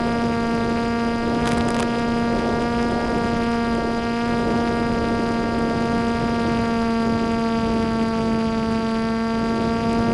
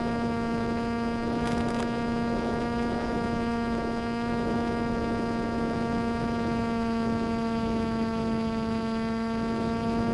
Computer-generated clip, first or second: second